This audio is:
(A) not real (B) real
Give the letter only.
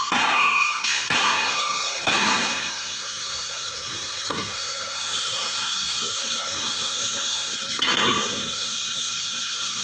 A